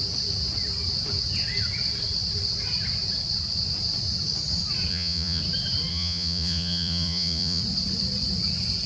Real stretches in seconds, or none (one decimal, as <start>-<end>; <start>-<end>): 0.0-4.9; 5.4-5.9; 7.6-8.9